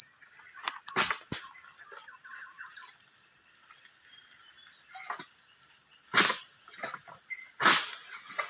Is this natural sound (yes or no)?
yes